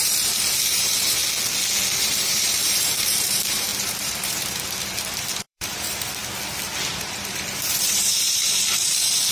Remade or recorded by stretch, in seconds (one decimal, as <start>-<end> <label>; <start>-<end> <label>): 0.0-1.2 remade; 1.2-2.0 recorded; 2.0-6.2 remade; 6.2-7.0 recorded; 7.0-9.3 remade